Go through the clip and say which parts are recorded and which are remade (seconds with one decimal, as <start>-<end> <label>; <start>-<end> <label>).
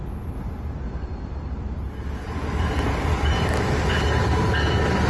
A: 0.0-5.1 recorded